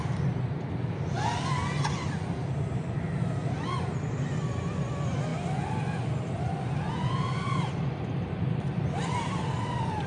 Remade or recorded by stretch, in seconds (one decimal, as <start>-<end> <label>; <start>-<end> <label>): 0.0-10.1 recorded